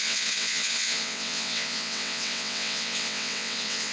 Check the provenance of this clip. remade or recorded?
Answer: remade